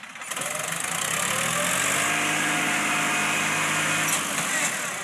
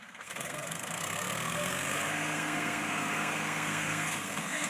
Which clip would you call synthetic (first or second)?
second